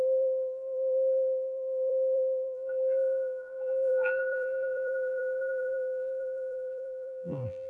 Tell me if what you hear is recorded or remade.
remade